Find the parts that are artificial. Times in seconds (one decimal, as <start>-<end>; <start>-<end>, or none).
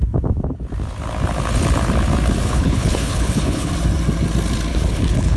2.4-3.7; 4.7-5.4